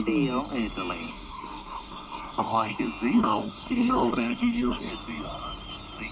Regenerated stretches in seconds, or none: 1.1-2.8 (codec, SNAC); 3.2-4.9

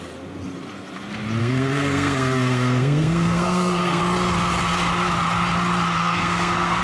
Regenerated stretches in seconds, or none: 1.4-4.0 (codec, SNAC); 6.0-6.8

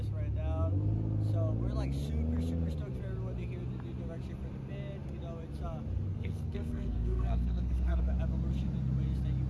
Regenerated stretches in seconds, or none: 6.1-8.0 (codec, SNAC)

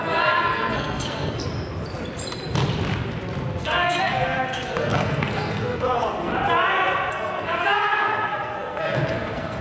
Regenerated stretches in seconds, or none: 0.0-1.5 (codec, SNAC); 3.6-6.3; 7.1-9.6